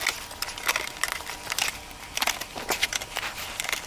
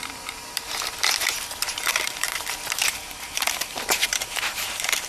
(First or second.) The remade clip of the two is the second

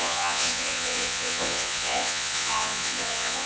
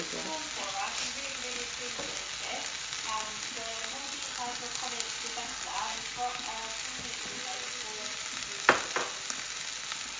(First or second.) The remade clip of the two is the first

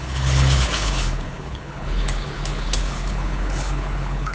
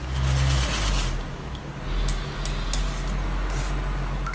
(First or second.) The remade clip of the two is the first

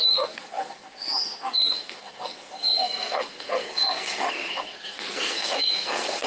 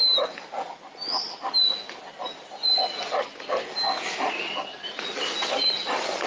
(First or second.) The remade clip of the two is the first